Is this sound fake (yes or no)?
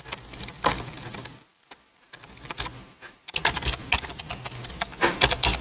no